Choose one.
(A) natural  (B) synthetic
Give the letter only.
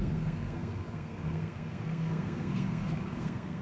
B